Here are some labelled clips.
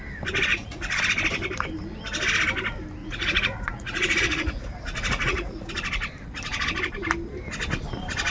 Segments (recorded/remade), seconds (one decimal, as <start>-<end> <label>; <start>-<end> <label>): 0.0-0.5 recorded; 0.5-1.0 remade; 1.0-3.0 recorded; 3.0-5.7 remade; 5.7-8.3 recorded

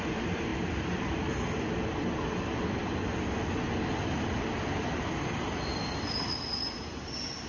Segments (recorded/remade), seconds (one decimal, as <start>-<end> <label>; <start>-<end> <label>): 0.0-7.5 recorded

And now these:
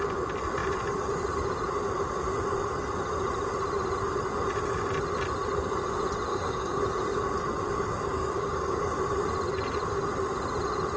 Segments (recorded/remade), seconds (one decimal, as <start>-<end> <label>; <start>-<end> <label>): 0.0-6.3 recorded; 6.3-6.8 remade; 6.8-8.2 recorded; 8.2-8.8 remade; 8.8-11.0 recorded